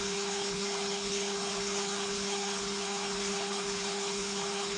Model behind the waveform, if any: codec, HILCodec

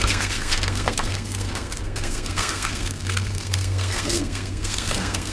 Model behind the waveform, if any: codec, SNAC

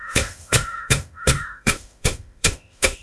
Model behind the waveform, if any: autoencoder, DAC-VAE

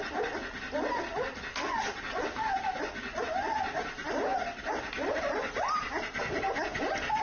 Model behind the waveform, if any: none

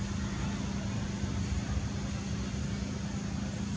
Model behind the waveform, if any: none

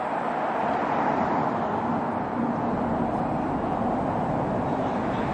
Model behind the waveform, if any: vocoder, BigVGAN v2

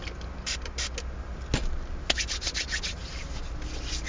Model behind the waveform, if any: none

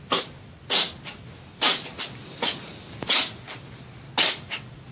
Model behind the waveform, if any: none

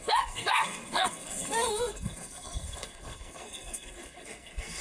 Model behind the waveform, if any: codec, SNAC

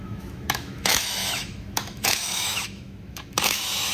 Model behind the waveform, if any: autoencoder, DAC-VAE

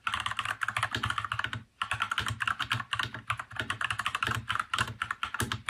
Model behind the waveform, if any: none